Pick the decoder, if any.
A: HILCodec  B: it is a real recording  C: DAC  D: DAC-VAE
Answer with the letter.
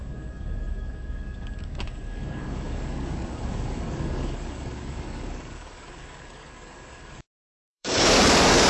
C